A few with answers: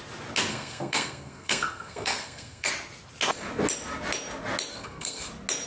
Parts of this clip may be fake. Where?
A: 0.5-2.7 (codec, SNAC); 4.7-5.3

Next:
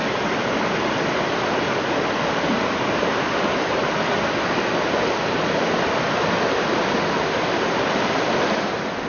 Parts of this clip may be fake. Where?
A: none

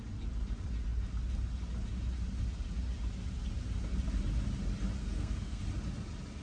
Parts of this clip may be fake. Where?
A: 5.0-5.6 (codec, SNAC)

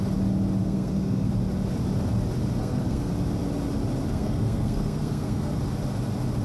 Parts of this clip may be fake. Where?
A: 0.6-1.3 (codec, SNAC); 2.6-3.1; 4.1-5.5